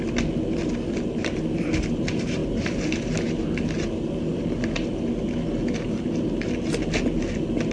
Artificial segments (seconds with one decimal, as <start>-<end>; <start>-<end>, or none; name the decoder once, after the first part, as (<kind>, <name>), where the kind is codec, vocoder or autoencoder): none